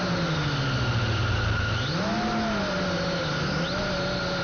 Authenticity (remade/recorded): recorded